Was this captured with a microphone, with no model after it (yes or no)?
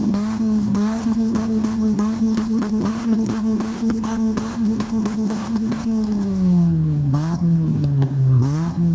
no